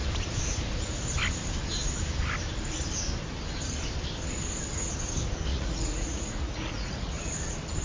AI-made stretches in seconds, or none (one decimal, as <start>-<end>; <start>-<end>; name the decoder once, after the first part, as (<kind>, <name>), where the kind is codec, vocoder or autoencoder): 5.5-7.3 (vocoder, Vocos)